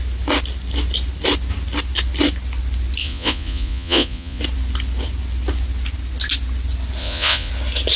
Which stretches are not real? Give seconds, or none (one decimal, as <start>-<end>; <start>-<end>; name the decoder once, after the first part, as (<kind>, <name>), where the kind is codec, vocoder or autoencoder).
3.0-4.4 (vocoder, Vocos); 7.0-7.5